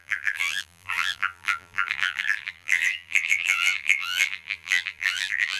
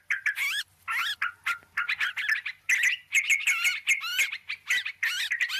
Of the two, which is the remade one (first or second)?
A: first